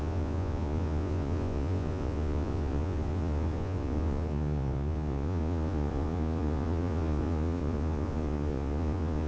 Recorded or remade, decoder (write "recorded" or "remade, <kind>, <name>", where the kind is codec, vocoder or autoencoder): remade, vocoder, Vocos